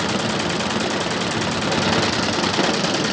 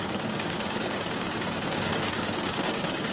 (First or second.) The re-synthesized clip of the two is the second